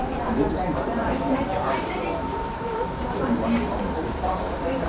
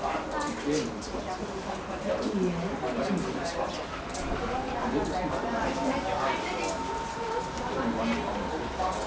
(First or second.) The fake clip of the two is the first